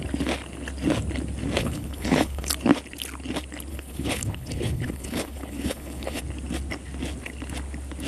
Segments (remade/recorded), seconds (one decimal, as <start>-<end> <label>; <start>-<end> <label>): 0.0-1.6 recorded; 1.6-2.5 remade; 2.5-3.7 recorded; 3.7-6.2 remade; 6.2-8.1 recorded